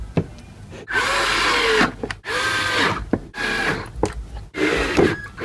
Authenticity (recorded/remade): recorded